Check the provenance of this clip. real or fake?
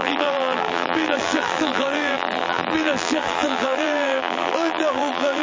fake